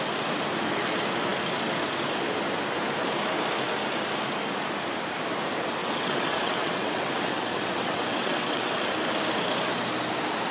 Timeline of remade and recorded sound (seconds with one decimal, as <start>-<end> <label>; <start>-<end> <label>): 0.0-5.8 recorded; 5.8-8.7 remade; 8.7-10.5 recorded